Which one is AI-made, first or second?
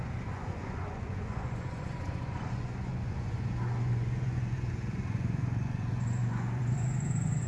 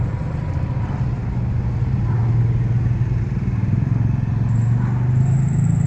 first